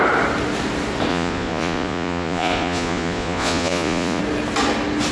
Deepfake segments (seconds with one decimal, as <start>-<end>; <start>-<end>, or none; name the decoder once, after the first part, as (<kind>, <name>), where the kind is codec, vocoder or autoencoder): 1.1-4.2 (vocoder, Vocos)